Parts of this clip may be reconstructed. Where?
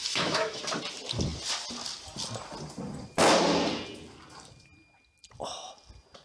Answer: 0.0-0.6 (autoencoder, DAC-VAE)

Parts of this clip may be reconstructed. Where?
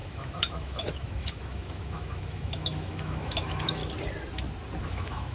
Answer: 0.0-3.8 (autoencoder, DAC-VAE); 4.8-5.3